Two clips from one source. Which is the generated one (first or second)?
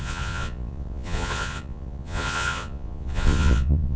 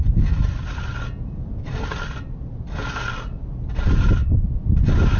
first